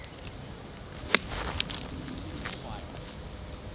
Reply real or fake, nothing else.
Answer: real